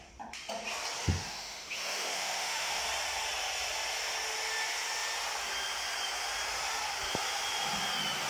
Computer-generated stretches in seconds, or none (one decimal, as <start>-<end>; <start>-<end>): 1.0-2.8